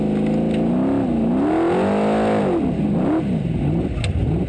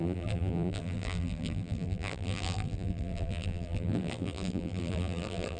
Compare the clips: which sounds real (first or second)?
first